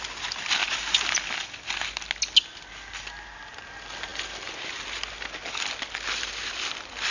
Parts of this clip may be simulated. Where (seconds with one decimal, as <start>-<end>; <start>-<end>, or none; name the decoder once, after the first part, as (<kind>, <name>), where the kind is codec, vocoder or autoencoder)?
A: 0.6-1.3 (vocoder, BigVGAN v2)

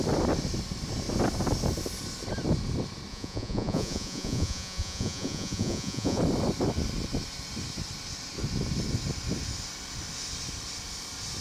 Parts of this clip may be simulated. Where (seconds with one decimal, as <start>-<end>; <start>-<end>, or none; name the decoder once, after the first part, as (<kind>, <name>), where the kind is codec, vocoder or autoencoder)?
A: 3.1-6.2 (vocoder, Vocos)

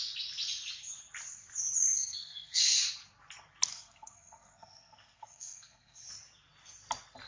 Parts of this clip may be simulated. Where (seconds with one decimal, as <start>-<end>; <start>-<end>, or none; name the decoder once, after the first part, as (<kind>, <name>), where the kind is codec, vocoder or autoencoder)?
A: 1.9-2.6 (codec, SNAC); 3.7-6.1

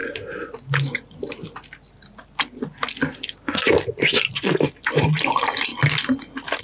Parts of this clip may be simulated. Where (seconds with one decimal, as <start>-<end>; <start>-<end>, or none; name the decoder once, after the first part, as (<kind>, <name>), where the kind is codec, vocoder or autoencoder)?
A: 4.0-5.7 (vocoder, BigVGAN v2)

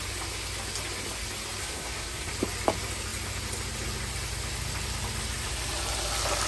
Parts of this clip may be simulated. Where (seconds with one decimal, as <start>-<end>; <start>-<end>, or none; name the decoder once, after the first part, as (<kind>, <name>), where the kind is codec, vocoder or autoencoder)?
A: 1.6-2.3 (codec, SNAC)

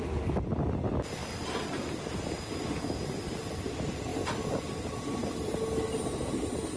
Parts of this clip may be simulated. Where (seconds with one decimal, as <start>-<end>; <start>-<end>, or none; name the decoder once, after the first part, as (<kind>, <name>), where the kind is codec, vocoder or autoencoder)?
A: none